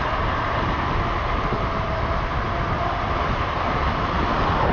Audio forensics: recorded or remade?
recorded